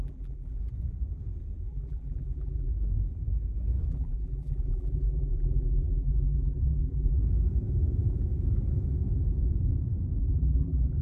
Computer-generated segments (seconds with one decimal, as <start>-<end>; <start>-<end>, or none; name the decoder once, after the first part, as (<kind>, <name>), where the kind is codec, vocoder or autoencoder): 0.0-0.6 (vocoder, BigVGAN v2); 1.7-2.7; 3.9-7.2; 10.2-11.0